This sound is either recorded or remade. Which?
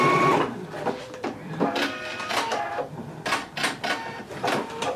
remade